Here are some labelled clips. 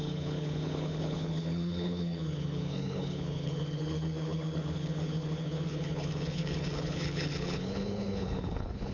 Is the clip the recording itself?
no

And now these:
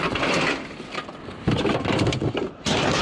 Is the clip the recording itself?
no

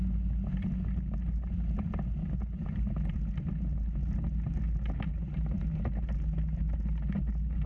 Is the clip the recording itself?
yes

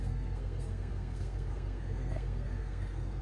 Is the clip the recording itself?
no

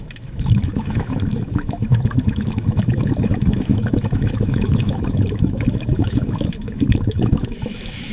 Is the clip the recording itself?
no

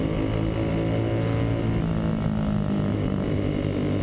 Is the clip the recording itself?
yes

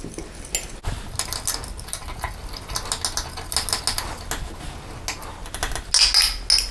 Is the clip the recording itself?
yes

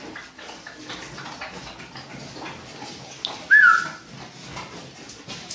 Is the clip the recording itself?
yes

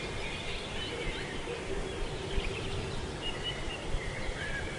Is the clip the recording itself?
no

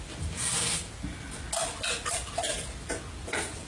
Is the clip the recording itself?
yes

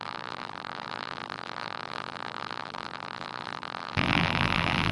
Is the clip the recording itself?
no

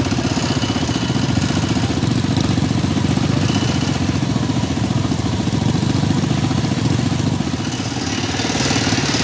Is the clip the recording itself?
yes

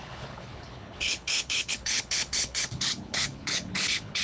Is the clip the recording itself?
no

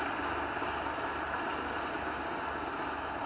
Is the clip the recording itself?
yes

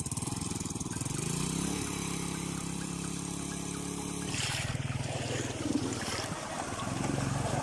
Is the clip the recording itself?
no